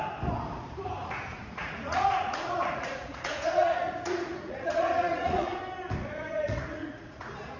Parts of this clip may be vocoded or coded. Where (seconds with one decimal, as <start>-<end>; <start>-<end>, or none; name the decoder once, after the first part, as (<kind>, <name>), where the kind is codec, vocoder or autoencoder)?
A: 1.0-5.6 (vocoder, Vocos); 6.0-7.6